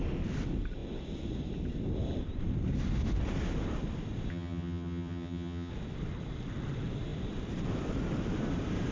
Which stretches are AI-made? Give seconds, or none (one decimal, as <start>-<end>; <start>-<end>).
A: 4.3-5.7